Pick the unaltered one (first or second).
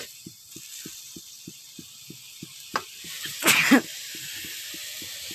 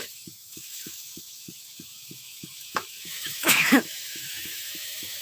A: first